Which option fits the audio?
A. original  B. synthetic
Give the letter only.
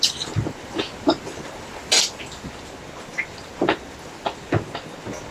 A